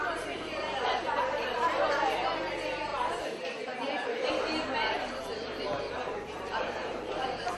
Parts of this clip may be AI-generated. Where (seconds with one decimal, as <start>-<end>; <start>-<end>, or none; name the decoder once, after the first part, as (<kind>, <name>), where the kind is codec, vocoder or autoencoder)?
0.0-1.9 (vocoder, BigVGAN v2); 2.9-7.6